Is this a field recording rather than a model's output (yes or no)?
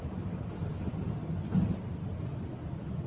yes